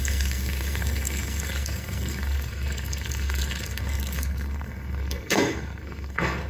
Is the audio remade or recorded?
remade